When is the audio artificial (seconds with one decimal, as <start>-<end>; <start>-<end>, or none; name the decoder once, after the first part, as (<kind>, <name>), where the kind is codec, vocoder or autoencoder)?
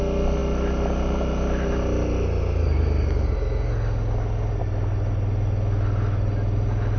none